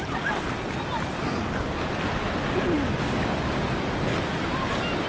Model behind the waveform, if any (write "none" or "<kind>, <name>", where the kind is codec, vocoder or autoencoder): none